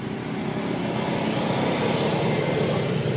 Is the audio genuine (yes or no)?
yes